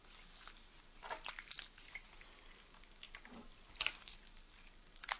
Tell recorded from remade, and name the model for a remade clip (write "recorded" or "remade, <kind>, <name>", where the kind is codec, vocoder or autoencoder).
recorded